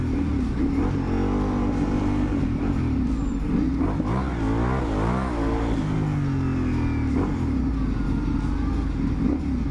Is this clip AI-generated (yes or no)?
no